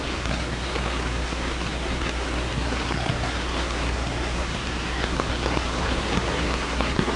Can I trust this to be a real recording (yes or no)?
no